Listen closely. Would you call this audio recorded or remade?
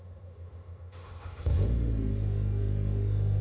remade